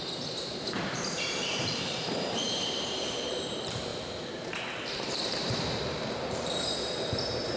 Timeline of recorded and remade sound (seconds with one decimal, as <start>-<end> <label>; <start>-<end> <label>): 0.0-7.6 remade

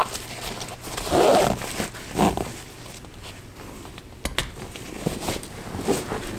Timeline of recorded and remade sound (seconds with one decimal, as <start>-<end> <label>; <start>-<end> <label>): 0.0-6.4 recorded

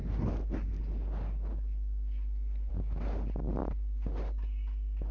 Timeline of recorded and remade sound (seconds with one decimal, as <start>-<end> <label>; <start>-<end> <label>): 0.0-5.1 recorded

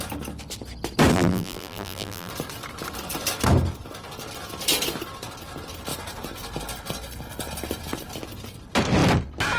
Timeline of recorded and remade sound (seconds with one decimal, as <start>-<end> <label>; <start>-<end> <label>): 0.0-1.1 recorded; 1.1-2.3 remade; 2.3-9.6 recorded

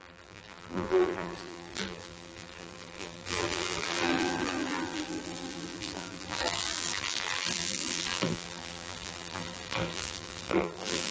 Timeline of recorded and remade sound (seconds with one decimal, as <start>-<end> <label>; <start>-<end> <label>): 0.0-11.1 remade

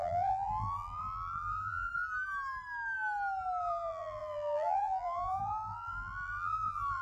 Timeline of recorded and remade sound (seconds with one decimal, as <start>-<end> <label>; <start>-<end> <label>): 0.0-1.9 remade; 1.9-3.6 recorded; 3.6-7.0 remade

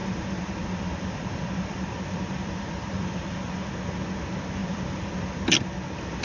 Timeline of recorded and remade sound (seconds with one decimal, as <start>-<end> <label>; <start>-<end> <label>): 0.0-3.7 remade; 3.7-4.6 recorded; 4.6-5.1 remade; 5.1-6.2 recorded

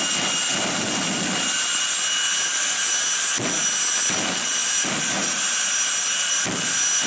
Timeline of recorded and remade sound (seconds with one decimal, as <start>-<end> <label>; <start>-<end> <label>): 0.0-0.5 recorded; 0.5-1.8 remade; 1.8-4.6 recorded; 4.6-5.5 remade; 5.5-7.1 recorded